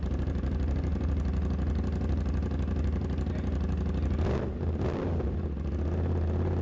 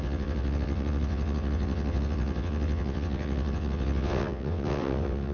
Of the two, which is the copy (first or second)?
second